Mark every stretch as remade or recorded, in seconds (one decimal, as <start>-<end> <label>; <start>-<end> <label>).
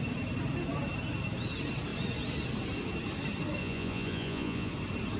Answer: 0.0-3.6 recorded; 3.6-4.7 remade; 4.7-5.2 recorded